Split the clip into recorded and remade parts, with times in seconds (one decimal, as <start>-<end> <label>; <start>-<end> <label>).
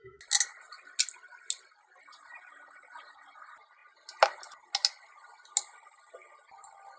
0.0-7.0 recorded